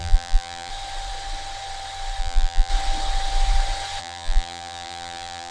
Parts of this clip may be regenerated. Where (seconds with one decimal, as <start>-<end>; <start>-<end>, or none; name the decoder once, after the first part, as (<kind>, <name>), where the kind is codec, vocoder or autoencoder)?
0.0-0.7 (vocoder, BigVGAN v2); 2.2-2.7; 4.0-5.5

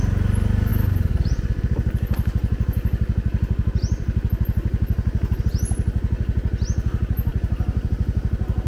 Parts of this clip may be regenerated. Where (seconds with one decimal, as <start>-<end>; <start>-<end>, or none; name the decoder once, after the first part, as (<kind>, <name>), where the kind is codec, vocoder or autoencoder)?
none

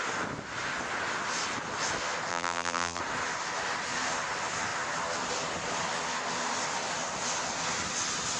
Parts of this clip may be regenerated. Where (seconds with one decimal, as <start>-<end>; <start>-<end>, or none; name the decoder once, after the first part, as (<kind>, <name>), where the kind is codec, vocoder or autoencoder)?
2.3-3.0 (vocoder, BigVGAN v2)

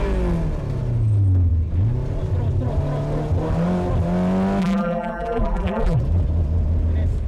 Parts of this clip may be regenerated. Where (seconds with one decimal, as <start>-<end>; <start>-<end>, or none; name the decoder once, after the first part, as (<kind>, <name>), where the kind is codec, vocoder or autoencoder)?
4.6-6.0 (vocoder, BigVGAN v2)

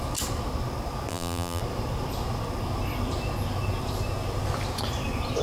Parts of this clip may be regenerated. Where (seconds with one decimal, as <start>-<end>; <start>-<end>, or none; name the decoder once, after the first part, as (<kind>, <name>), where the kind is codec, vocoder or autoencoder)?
1.1-1.6 (vocoder, BigVGAN v2)

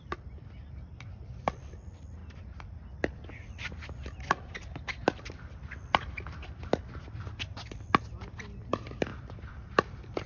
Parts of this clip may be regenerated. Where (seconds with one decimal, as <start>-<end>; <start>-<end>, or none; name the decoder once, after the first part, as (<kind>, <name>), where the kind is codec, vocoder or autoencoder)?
9.1-10.3 (vocoder, BigVGAN v2)

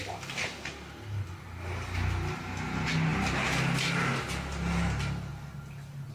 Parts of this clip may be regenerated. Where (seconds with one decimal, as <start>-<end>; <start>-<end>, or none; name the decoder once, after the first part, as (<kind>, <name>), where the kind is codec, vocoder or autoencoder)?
none